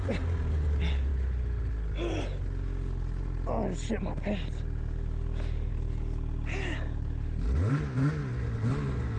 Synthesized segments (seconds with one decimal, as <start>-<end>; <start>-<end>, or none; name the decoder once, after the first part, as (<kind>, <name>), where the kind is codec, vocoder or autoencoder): none